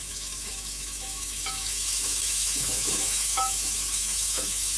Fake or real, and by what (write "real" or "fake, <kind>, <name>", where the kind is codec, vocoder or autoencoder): fake, autoencoder, DAC-VAE